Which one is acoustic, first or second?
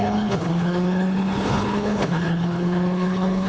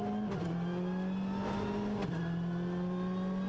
second